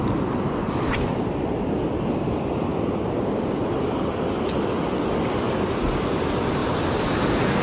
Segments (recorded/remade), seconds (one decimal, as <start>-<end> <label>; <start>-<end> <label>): 0.0-7.6 recorded